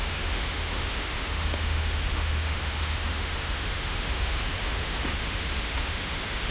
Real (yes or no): no